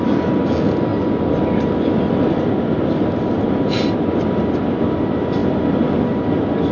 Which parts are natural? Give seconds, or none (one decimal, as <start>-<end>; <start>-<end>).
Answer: 0.0-6.7